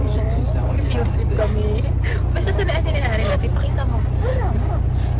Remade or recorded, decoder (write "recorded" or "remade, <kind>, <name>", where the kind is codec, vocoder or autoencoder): recorded